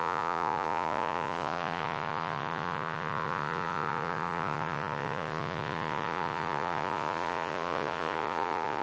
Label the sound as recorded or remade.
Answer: remade